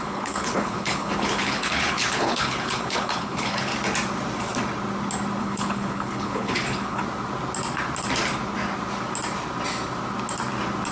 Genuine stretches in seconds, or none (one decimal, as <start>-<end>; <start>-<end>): 3.7-5.4; 7.0-10.9